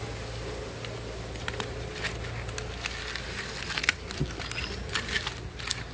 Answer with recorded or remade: recorded